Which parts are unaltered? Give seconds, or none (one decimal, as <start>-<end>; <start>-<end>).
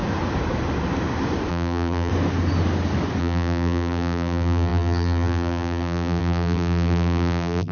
0.0-1.5; 2.1-3.2